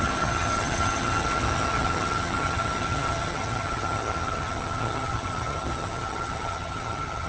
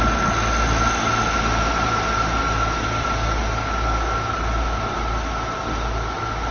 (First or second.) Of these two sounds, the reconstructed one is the first